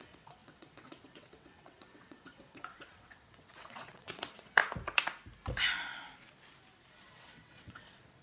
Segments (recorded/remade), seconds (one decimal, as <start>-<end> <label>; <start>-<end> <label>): 0.0-4.6 remade; 4.6-7.0 recorded; 7.0-8.2 remade

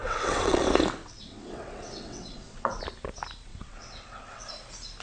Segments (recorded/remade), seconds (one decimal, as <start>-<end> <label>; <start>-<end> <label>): 0.0-0.6 remade; 0.6-1.0 recorded; 1.0-2.8 remade; 2.8-3.5 recorded; 3.5-4.4 remade; 4.4-5.0 recorded

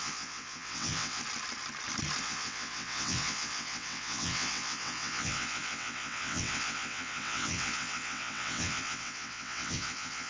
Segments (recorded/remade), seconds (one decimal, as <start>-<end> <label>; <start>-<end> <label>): 0.0-1.2 remade; 1.2-2.2 recorded; 2.2-10.3 remade

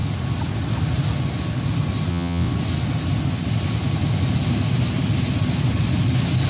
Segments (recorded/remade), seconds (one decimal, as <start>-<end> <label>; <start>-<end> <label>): 0.0-2.1 recorded; 2.1-2.5 remade; 2.5-6.5 recorded

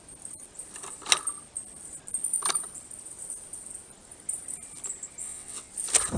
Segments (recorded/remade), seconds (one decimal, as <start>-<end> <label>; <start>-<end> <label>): 0.0-5.2 recorded; 5.2-5.7 remade; 5.7-6.2 recorded